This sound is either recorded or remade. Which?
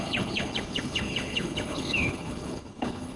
remade